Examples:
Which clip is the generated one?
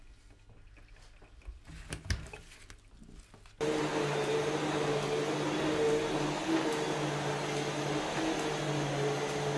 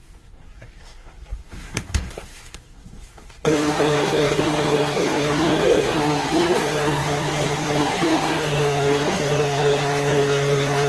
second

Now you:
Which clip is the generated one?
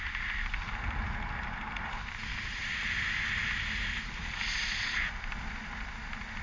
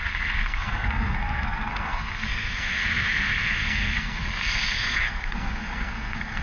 second